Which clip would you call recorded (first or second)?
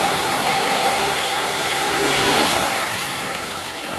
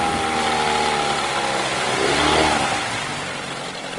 second